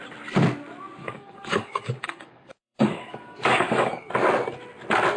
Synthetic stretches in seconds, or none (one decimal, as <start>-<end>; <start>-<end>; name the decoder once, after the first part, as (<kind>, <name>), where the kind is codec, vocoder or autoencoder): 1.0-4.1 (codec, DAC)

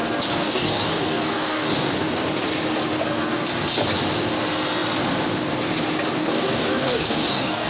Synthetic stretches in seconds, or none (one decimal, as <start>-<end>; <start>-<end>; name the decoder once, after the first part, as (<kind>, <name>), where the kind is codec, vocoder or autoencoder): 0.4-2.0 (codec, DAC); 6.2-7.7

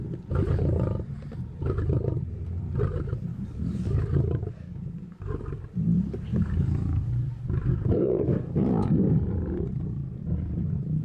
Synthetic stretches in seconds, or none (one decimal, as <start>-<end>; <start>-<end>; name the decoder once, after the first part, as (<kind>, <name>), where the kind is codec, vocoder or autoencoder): 3.3-5.6 (codec, DAC); 6.3-8.9

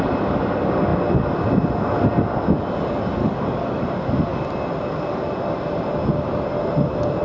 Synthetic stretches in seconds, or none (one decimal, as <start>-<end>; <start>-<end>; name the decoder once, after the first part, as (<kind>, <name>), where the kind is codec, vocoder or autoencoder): 3.2-3.8 (codec, DAC)

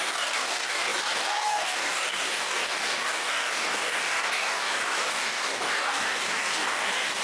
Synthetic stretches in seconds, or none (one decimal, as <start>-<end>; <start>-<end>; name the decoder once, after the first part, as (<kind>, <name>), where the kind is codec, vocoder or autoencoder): 0.0-7.2 (codec, DAC)

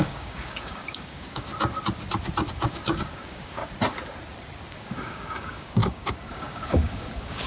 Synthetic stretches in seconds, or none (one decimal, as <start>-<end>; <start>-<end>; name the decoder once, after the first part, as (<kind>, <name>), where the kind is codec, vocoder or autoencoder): 0.0-1.5 (codec, DAC); 2.5-3.6; 4.7-7.5